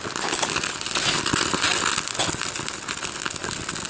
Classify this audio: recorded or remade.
recorded